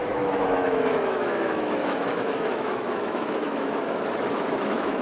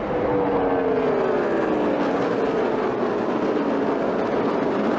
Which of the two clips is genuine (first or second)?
second